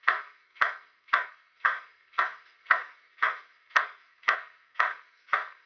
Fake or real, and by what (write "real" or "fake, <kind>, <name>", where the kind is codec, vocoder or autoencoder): fake, codec, SNAC